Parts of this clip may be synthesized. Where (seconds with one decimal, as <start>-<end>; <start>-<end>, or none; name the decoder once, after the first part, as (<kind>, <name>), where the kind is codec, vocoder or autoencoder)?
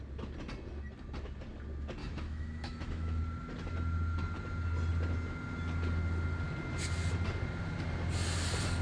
2.0-3.2 (autoencoder, DAC-VAE)